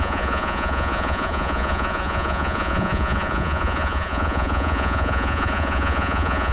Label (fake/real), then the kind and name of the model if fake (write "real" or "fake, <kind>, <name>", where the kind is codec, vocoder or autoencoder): fake, vocoder, Vocos